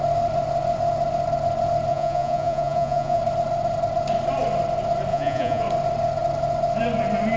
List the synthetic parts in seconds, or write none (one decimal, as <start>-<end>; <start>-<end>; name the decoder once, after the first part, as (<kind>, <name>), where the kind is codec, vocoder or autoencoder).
1.9-3.2 (vocoder, Vocos); 5.1-5.6